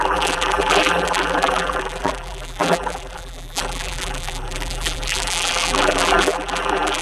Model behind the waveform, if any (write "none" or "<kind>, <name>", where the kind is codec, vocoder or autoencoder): vocoder, BigVGAN v2